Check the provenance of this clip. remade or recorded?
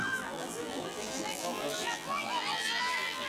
remade